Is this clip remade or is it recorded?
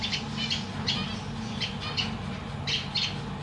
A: recorded